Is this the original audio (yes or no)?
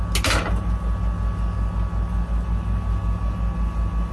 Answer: yes